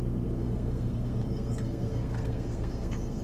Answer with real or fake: fake